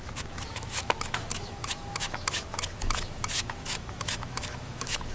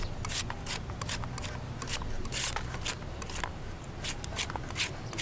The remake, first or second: first